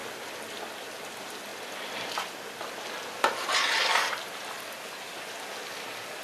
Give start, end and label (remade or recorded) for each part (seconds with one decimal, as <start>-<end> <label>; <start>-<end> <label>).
0.0-6.2 recorded